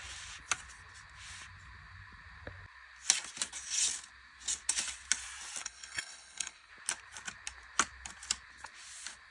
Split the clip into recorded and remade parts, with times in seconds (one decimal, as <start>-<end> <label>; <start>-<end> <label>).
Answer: 0.0-5.6 recorded; 5.6-6.7 remade; 6.7-9.3 recorded

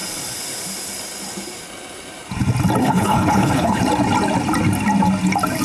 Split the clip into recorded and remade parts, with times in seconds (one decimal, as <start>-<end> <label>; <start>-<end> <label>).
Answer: 0.0-2.8 recorded; 2.8-3.8 remade; 3.8-5.6 recorded